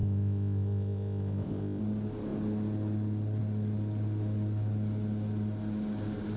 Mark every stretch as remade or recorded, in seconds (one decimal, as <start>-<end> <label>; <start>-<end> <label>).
0.0-1.8 remade; 1.8-6.4 recorded